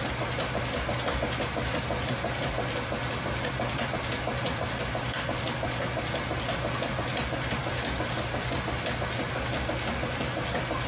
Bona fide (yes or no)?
yes